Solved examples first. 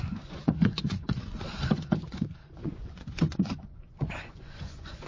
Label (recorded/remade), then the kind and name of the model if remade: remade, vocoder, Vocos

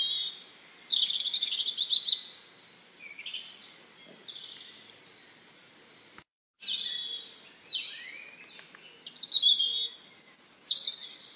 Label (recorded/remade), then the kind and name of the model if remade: recorded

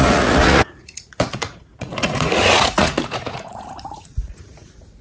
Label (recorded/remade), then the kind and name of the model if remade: remade, vocoder, Vocos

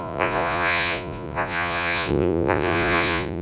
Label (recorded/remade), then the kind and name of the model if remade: remade, vocoder, Vocos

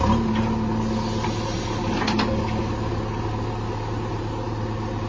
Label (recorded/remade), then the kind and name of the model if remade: recorded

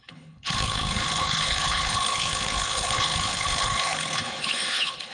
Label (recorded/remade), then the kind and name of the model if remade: remade, codec, HILCodec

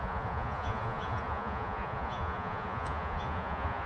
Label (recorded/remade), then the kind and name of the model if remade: remade, vocoder, Vocos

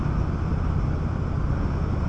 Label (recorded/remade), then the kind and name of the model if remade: recorded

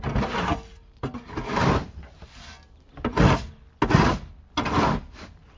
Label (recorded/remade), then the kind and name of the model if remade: recorded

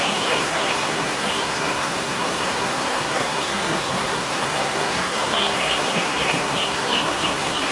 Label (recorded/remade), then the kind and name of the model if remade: remade, codec, SNAC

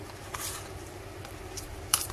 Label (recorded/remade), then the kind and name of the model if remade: remade, vocoder, BigVGAN v2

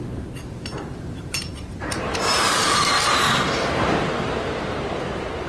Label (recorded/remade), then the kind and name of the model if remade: remade, vocoder, BigVGAN v2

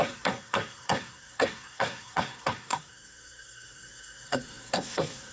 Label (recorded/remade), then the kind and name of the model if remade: remade, codec, SNAC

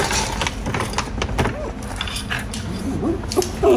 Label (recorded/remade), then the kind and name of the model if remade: recorded